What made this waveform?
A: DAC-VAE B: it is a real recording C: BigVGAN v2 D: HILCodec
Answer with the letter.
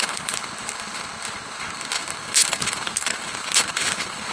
D